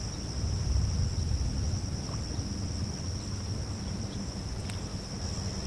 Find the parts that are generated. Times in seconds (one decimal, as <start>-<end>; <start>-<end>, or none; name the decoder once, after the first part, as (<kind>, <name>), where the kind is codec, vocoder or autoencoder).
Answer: none